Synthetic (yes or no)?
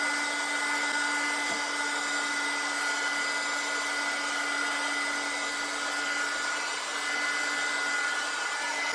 no